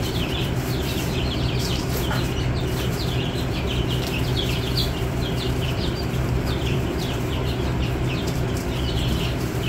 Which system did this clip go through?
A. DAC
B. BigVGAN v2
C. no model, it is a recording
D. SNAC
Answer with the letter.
B